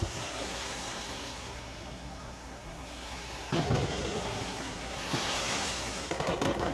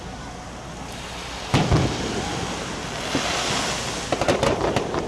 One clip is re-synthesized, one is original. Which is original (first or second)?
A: second